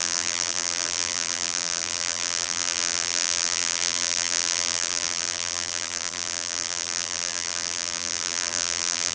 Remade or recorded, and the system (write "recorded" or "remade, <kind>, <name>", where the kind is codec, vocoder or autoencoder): remade, vocoder, BigVGAN v2